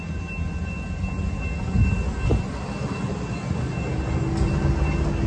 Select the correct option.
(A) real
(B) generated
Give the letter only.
A